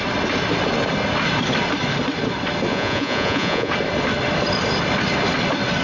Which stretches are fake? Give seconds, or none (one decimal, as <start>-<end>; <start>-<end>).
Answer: 2.7-3.7